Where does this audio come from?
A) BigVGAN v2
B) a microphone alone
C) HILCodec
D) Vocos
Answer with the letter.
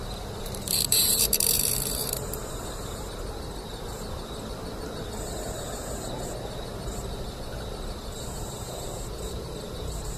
A